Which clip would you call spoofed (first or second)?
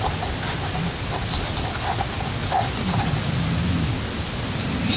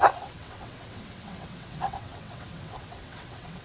second